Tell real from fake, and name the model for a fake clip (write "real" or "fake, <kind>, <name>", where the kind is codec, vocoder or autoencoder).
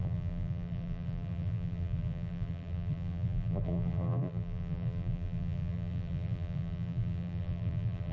fake, vocoder, BigVGAN v2